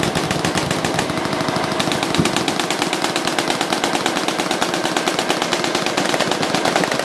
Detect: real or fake real